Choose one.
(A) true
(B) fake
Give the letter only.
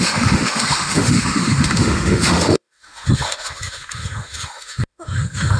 B